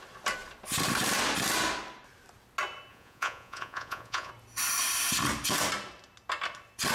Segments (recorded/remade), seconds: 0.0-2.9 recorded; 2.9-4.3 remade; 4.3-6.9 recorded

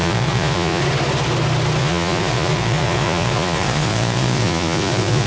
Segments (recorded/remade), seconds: 0.0-0.8 remade; 0.8-1.8 recorded; 1.8-5.3 remade

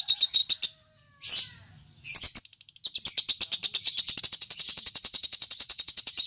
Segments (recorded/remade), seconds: 0.0-0.4 remade; 0.4-4.2 recorded; 4.2-6.3 remade